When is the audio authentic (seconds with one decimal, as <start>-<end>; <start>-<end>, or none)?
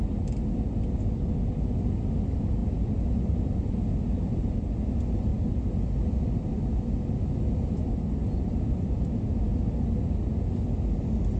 0.0-11.4